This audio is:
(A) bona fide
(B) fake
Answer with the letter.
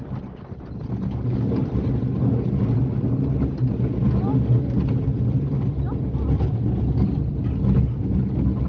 A